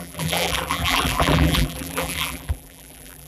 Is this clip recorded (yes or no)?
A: no